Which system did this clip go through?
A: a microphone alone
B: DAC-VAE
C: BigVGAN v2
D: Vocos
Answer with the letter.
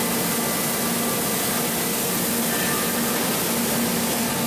A